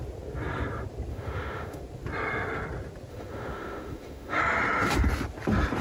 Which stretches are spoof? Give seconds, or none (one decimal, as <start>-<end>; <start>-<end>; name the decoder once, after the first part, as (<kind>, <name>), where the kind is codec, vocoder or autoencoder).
1.1-1.8 (autoencoder, DAC-VAE); 3.1-4.4